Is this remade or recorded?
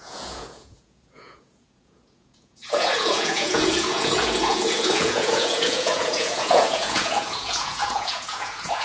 remade